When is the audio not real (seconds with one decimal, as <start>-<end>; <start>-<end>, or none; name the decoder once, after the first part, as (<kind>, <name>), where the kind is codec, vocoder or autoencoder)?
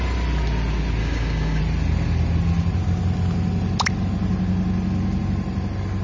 1.0-1.6 (codec, DAC)